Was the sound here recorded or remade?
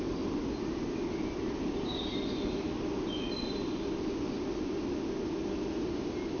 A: recorded